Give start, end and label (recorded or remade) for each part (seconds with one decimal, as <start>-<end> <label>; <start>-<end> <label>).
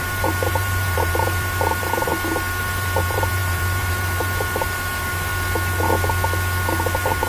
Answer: 0.0-2.1 remade; 2.1-2.6 recorded; 2.6-5.3 remade; 5.3-6.8 recorded; 6.8-7.3 remade